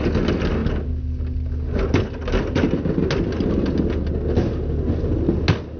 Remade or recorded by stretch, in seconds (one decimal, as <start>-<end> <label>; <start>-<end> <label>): 0.0-5.8 recorded